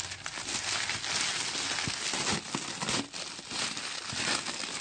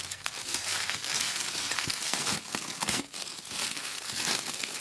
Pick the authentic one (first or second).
first